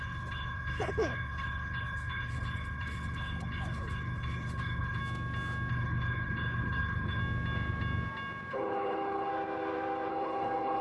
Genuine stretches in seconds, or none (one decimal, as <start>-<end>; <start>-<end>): 5.0-5.7; 7.2-8.5; 9.3-10.1